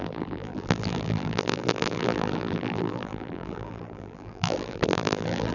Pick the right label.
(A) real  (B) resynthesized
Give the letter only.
B